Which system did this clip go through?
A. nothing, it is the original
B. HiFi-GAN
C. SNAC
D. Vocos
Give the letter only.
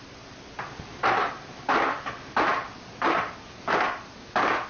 A